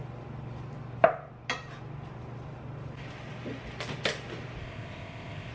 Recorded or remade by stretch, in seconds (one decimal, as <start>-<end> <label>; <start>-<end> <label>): 0.0-4.6 recorded; 4.6-5.5 remade